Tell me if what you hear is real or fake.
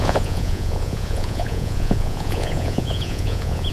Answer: fake